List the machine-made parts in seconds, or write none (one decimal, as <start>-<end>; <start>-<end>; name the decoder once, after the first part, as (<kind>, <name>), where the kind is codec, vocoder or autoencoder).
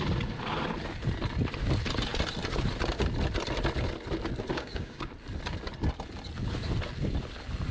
4.5-5.1 (codec, DAC)